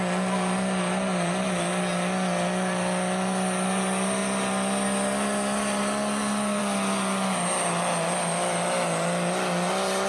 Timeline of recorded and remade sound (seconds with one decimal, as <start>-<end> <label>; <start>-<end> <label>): 0.0-10.1 recorded